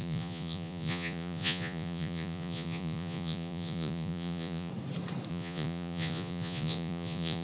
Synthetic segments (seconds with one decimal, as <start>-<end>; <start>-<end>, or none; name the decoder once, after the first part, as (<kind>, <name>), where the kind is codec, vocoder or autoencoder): 0.0-4.7 (vocoder, Vocos); 5.3-7.4